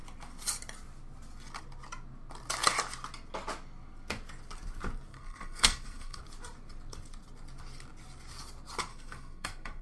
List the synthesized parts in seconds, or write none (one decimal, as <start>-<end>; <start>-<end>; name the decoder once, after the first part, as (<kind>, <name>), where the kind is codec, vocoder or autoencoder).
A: 5.1-6.2 (codec, SNAC); 8.9-9.8